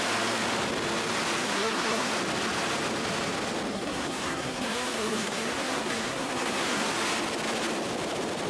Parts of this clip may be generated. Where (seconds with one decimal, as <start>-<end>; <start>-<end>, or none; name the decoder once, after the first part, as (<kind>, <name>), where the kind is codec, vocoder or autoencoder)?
1.4-2.1 (codec, SNAC); 3.7-6.9